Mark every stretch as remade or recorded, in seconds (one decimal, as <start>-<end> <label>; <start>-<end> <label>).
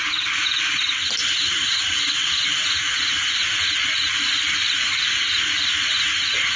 0.0-6.6 recorded